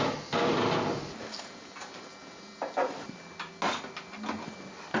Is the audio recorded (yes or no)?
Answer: yes